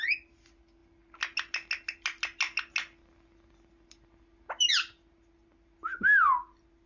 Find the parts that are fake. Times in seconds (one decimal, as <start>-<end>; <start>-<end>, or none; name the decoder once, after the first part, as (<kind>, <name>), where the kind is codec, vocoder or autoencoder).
none